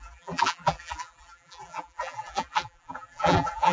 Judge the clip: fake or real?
fake